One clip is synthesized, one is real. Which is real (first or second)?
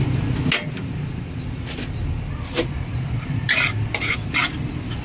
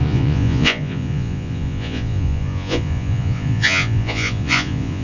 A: first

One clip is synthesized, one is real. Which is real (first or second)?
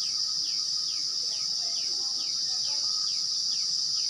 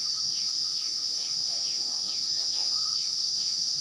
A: first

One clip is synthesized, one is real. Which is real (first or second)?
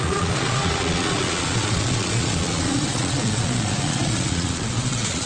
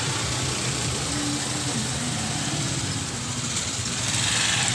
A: second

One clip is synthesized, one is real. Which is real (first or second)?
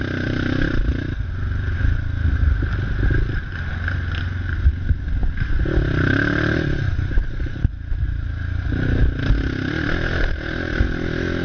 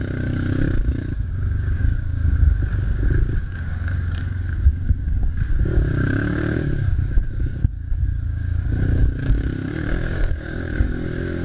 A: first